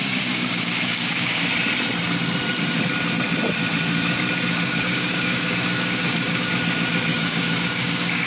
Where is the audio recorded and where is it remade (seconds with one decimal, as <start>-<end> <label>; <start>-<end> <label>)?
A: 0.0-1.5 remade; 1.5-4.5 recorded; 4.5-6.5 remade; 6.5-7.1 recorded; 7.1-8.3 remade